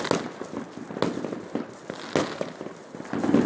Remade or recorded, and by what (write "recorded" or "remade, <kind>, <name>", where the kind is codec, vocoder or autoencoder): recorded